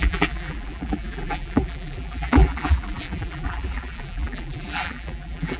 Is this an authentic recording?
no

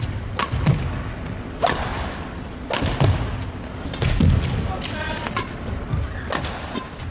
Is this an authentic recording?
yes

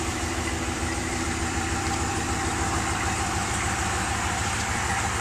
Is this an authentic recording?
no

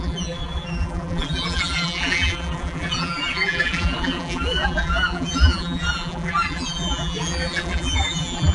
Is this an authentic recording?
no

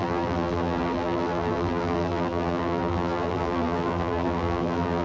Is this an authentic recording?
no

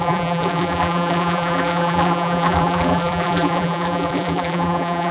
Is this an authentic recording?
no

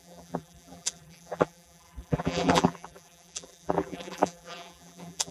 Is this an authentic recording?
no